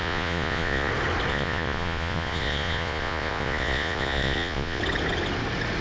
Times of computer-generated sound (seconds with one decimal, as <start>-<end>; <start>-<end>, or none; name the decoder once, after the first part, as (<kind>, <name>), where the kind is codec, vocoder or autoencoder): 0.0-0.9 (vocoder, Vocos); 1.3-4.8